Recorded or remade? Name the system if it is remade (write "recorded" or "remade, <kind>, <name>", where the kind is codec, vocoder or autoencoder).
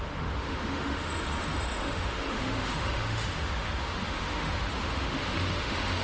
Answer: remade, autoencoder, DAC-VAE